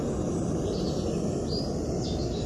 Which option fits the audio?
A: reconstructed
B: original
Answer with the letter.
B